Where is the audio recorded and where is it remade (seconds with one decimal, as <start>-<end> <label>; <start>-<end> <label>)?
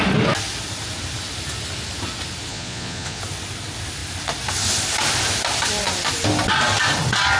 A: 0.0-2.5 recorded; 2.5-3.2 remade; 3.2-7.4 recorded